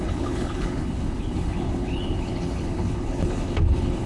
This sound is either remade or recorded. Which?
remade